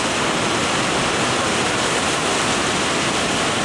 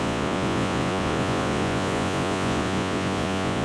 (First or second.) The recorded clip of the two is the first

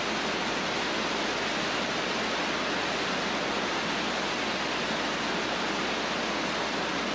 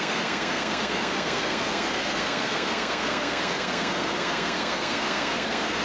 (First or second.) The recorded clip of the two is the first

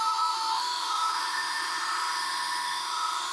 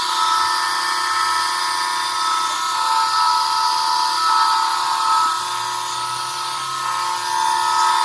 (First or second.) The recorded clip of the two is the second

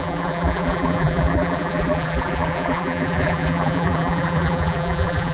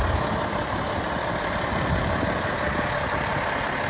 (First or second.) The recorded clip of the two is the second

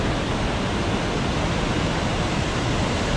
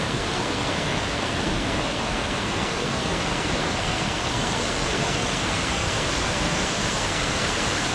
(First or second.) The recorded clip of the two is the first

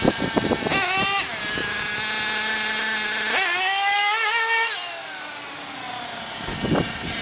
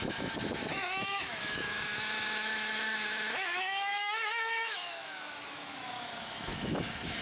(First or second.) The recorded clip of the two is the first